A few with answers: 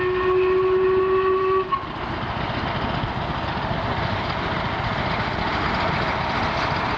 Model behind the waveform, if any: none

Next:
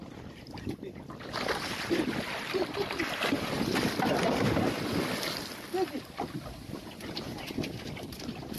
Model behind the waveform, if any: none